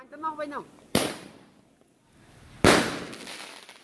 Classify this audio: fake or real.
real